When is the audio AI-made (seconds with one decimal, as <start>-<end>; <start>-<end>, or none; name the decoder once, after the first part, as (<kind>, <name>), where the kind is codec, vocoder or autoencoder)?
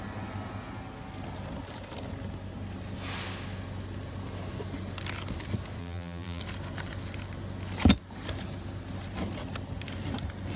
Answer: 5.8-6.4 (vocoder, BigVGAN v2)